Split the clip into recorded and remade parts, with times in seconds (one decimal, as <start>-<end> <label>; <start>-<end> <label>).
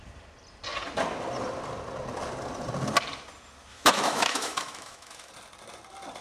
0.0-3.7 recorded; 3.7-5.3 remade; 5.3-6.2 recorded